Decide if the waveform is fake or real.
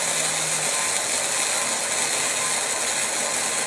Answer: real